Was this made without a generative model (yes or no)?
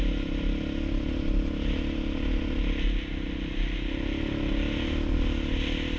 yes